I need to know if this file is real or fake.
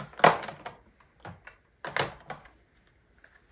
real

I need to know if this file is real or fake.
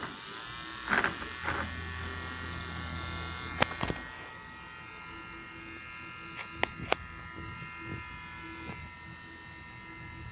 real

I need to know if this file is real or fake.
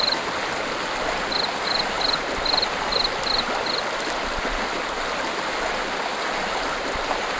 real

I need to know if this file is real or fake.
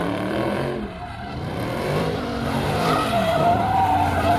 fake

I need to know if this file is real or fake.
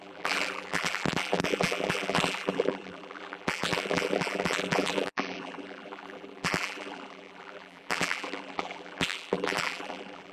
fake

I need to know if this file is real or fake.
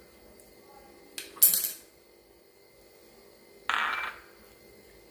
real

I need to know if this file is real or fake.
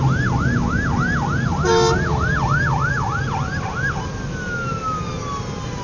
real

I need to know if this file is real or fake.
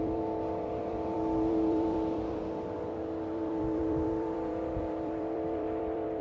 fake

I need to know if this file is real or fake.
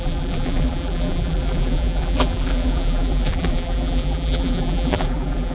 fake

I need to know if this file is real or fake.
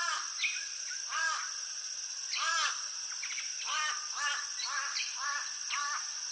real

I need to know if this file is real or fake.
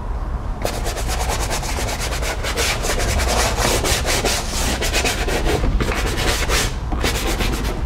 real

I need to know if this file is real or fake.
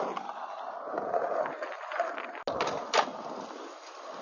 real